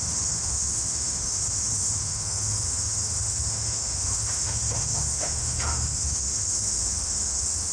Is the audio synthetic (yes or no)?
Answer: yes